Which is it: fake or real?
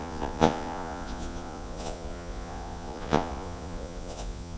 fake